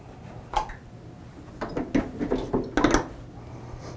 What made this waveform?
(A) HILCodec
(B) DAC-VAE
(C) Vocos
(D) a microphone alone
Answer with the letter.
D